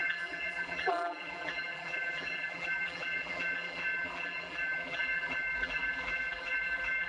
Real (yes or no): no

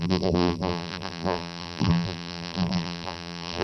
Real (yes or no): no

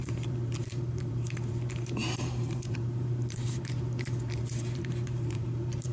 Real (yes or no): no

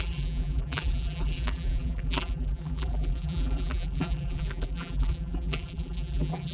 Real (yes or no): no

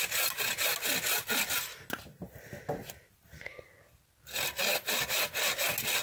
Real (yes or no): yes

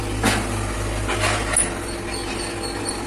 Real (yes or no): yes